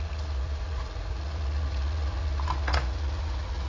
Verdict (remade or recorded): remade